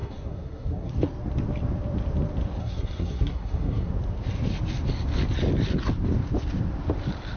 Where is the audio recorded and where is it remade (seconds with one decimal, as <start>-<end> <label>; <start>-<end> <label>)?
0.0-0.9 remade; 0.9-2.6 recorded; 2.6-3.9 remade; 3.9-7.4 recorded